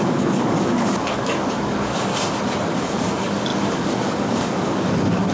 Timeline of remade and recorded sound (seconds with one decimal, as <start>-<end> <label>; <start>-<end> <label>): 0.0-2.1 remade; 2.1-2.7 recorded; 2.7-5.3 remade